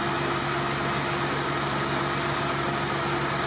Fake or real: real